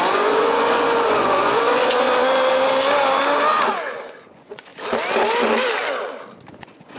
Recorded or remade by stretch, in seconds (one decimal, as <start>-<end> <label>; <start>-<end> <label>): 0.0-2.1 remade; 2.1-3.7 recorded; 3.7-4.7 remade; 4.7-6.6 recorded; 6.6-7.0 remade